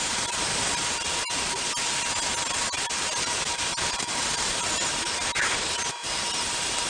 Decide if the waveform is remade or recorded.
recorded